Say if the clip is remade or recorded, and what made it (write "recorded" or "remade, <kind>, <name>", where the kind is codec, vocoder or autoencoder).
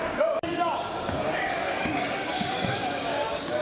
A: remade, codec, DAC